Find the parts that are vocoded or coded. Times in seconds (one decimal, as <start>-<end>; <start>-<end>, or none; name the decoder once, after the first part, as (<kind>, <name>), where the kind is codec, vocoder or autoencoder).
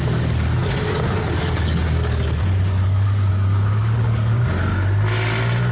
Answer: 0.0-4.7 (codec, DAC)